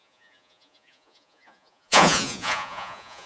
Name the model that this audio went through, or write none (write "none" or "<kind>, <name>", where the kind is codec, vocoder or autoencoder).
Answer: vocoder, Vocos